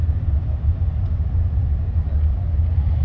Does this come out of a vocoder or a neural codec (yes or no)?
no